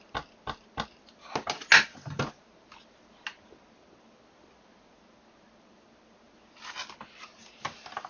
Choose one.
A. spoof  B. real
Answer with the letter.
B